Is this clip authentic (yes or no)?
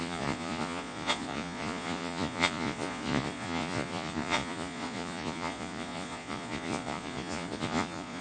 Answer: no